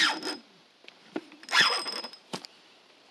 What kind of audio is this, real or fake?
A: real